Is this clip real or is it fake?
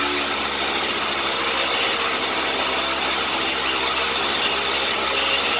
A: real